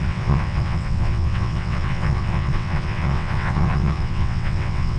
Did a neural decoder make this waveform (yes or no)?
yes